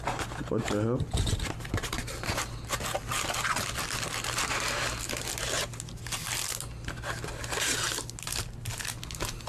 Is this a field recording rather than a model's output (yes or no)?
yes